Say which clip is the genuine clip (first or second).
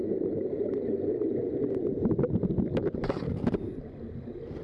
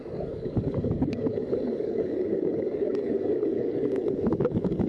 first